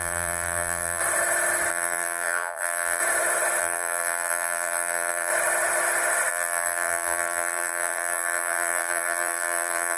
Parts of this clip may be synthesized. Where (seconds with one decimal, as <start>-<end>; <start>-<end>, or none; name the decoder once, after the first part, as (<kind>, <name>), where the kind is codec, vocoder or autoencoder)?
0.0-1.0 (vocoder, BigVGAN v2); 1.7-3.0; 3.6-5.3; 6.3-10.0